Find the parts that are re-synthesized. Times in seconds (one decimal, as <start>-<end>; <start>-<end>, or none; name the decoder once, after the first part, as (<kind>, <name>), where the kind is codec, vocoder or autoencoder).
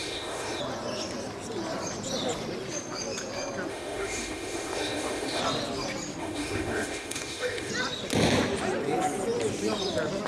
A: 0.0-0.6 (autoencoder, DAC-VAE); 3.7-5.4; 6.2-7.7